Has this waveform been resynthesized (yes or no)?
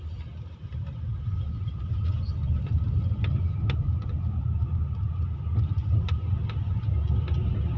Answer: no